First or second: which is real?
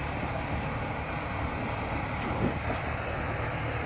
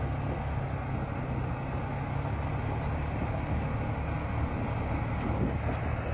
second